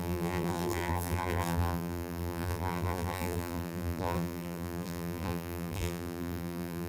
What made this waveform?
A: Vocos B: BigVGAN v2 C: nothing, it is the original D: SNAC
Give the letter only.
B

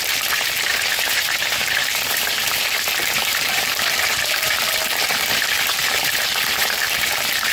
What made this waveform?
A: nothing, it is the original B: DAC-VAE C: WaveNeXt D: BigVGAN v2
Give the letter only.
D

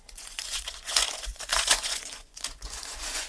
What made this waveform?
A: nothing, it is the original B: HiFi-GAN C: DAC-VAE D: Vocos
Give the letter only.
D